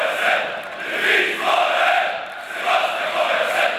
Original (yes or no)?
yes